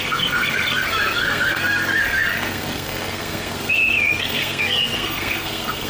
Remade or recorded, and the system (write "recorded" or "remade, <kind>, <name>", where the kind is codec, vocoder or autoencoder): remade, codec, SNAC